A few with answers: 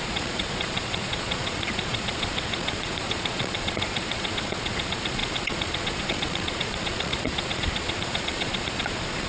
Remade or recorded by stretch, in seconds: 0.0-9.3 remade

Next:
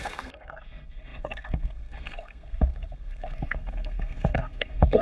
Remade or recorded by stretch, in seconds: 0.0-5.0 remade

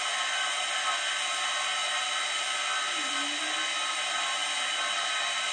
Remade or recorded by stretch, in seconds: 0.0-5.5 recorded

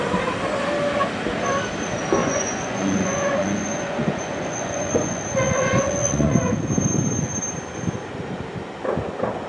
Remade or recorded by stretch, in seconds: 0.0-2.2 recorded; 2.2-6.5 remade; 6.5-9.5 recorded

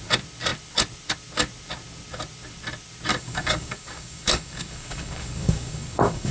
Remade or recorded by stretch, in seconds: 0.0-3.1 recorded; 3.1-6.3 remade

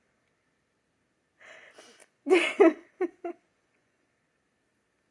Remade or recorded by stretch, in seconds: 0.0-2.0 recorded; 2.0-4.1 remade; 4.1-5.1 recorded

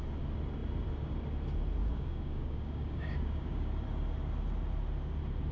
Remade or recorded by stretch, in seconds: 0.0-1.8 recorded; 1.8-3.7 remade; 3.7-5.5 recorded